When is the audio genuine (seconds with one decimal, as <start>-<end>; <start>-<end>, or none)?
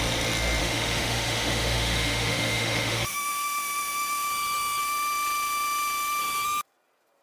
0.0-0.6; 4.3-4.8; 6.2-7.2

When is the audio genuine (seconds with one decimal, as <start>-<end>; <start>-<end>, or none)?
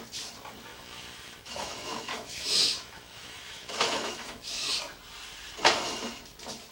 0.0-0.7; 4.7-6.7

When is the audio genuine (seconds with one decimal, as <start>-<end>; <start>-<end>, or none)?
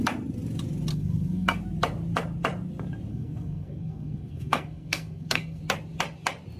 0.0-0.9; 1.6-3.1; 5.6-6.6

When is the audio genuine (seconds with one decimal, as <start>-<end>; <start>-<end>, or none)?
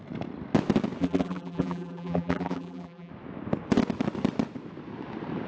0.0-1.0; 3.1-5.5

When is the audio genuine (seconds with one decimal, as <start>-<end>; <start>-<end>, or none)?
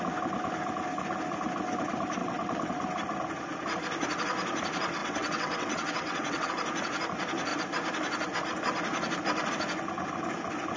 0.0-2.2; 2.7-5.0; 6.5-10.8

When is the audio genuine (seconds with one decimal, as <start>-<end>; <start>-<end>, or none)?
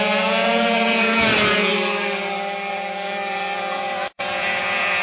1.7-2.7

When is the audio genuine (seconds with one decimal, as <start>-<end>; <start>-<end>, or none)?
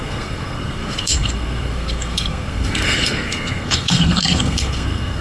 none